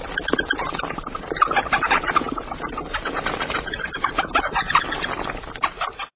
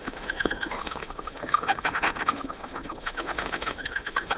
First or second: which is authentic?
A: first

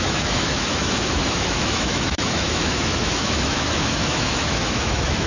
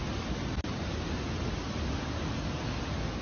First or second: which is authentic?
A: second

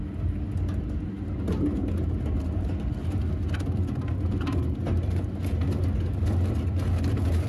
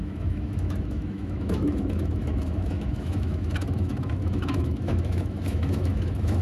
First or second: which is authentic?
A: first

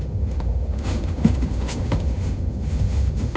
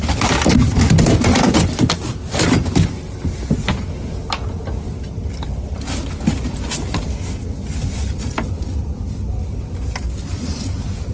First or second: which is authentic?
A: second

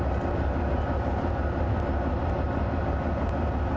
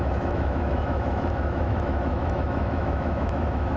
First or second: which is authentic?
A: first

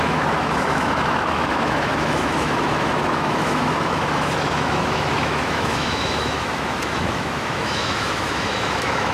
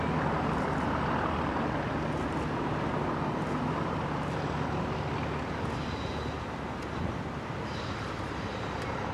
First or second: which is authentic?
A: second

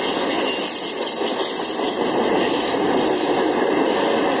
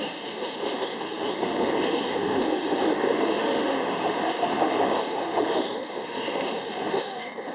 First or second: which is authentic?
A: first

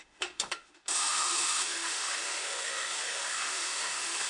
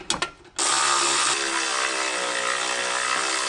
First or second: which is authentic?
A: second